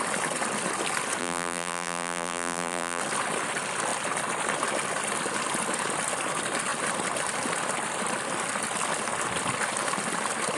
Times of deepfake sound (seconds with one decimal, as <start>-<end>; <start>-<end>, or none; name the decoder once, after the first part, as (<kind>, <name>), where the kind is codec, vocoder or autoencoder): 1.2-3.0 (vocoder, BigVGAN v2)